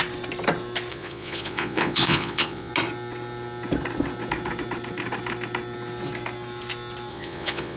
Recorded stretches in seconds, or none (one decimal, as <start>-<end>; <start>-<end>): 0.0-0.9; 2.7-7.1